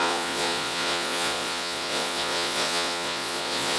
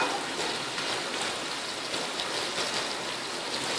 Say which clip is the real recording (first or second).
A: second